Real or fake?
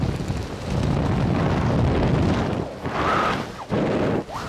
real